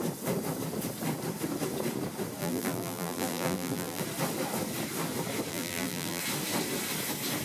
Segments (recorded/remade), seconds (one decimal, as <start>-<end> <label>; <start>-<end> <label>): 0.0-2.4 recorded; 2.4-4.0 remade; 4.0-5.5 recorded; 5.5-6.2 remade; 6.2-7.4 recorded